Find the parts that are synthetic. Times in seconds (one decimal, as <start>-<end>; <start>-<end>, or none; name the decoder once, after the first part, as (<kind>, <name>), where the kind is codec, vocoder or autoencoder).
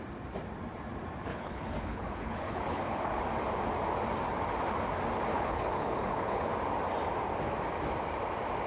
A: 1.3-3.2 (codec, HILCodec); 5.3-6.5